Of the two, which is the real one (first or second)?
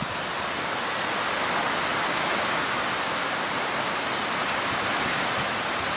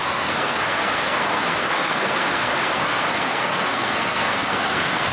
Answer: first